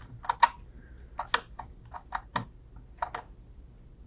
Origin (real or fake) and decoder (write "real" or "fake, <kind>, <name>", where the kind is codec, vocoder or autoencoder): real